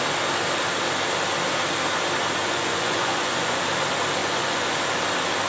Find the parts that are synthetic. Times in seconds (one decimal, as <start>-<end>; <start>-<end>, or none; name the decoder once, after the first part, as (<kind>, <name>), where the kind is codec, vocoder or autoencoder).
2.4-3.6 (vocoder, Vocos); 4.2-4.8